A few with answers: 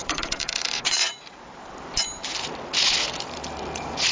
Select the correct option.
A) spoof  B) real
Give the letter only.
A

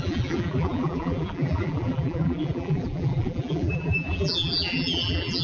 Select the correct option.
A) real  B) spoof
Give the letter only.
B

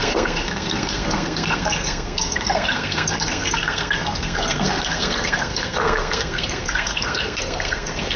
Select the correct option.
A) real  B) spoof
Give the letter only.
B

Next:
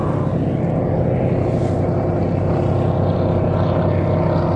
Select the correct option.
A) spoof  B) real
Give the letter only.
B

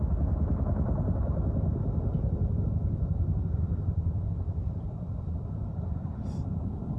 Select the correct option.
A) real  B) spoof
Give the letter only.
B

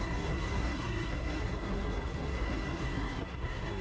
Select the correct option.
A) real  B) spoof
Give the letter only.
B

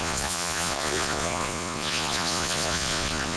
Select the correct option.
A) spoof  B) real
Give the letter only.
A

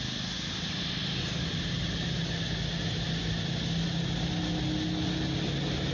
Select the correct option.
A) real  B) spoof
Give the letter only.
A